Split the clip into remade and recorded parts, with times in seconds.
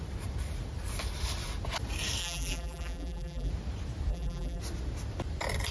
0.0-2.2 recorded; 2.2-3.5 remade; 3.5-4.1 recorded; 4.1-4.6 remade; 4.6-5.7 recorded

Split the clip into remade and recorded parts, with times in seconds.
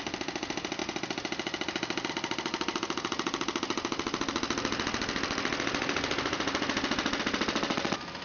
0.0-8.2 recorded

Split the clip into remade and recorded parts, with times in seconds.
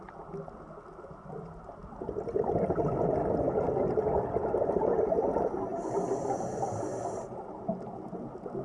0.0-8.6 recorded